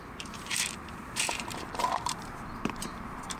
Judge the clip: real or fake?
fake